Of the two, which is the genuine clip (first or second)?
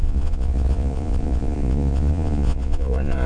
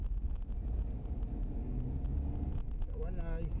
second